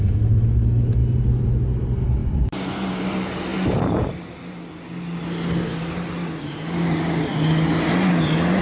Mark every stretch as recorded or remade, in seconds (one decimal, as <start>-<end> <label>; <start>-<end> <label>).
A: 0.0-2.2 recorded; 2.2-3.0 remade; 3.0-8.6 recorded